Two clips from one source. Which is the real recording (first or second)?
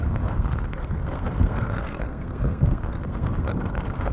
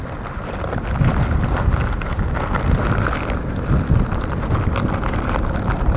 second